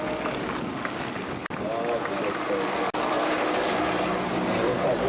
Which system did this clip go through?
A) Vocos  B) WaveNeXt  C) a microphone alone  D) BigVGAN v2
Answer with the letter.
C